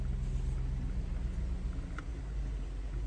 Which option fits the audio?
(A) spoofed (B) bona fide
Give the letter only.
B